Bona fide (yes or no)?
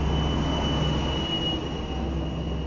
yes